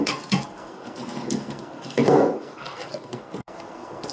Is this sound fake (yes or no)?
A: yes